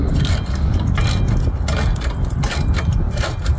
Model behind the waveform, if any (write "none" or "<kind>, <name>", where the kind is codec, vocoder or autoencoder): none